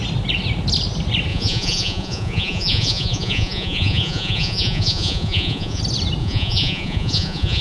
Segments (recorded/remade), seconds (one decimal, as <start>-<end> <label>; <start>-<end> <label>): 0.0-1.3 recorded; 1.3-5.8 remade; 5.8-6.2 recorded; 6.2-7.6 remade